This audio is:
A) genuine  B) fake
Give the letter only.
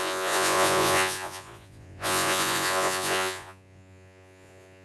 B